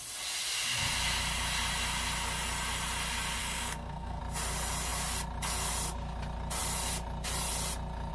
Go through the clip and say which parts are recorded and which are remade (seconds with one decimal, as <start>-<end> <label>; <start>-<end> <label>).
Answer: 0.0-3.4 recorded; 3.4-4.2 remade; 4.2-8.1 recorded